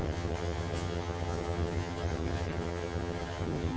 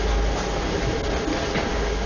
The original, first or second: second